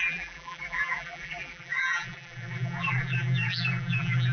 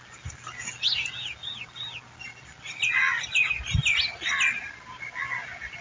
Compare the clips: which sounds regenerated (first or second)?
first